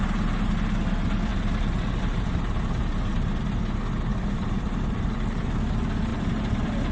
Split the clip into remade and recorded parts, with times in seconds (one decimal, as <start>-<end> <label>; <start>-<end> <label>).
0.0-1.3 recorded; 1.3-3.6 remade; 3.6-4.1 recorded; 4.1-5.6 remade; 5.6-6.1 recorded; 6.1-6.9 remade